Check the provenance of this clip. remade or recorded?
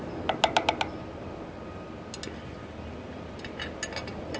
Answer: recorded